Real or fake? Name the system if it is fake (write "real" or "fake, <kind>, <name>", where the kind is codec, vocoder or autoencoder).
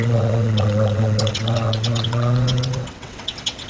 fake, vocoder, WaveNeXt